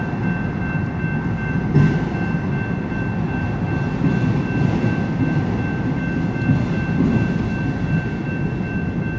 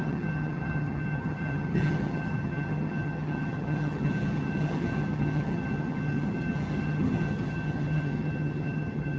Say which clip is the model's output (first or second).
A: second